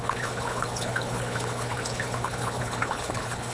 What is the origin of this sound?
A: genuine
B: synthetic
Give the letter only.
B